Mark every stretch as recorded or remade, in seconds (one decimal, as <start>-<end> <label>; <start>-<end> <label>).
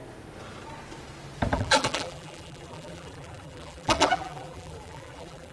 0.0-1.5 recorded; 1.5-5.5 remade